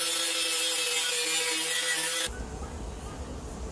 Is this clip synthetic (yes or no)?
no